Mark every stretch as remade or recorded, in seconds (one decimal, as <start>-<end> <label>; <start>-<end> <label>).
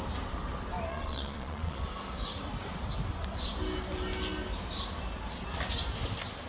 0.0-0.9 recorded; 0.9-1.8 remade; 1.8-6.5 recorded